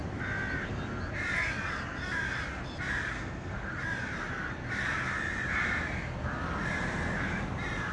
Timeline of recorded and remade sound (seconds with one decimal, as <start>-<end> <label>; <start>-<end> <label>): 0.0-3.1 recorded; 3.1-3.7 remade; 3.7-7.9 recorded